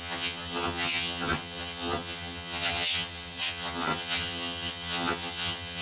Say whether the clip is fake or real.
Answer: fake